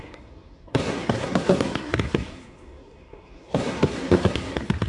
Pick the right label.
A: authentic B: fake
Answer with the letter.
B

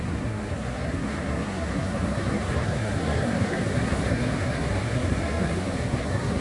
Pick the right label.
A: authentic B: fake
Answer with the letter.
B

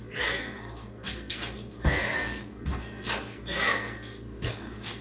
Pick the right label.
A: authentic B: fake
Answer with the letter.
B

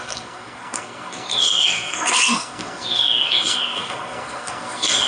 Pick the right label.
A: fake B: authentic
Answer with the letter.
A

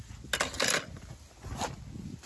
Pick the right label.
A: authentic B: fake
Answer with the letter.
A